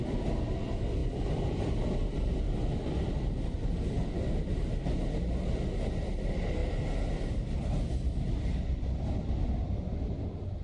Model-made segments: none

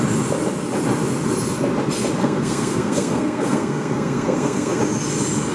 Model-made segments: 2.2-4.8 (codec, SNAC)

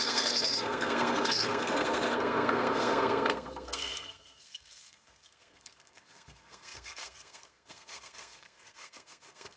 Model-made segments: 0.0-9.6 (codec, SNAC)